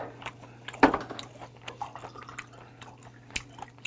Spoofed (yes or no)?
no